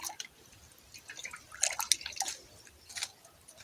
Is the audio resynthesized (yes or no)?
no